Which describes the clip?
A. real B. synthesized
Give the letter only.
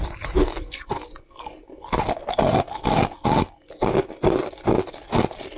A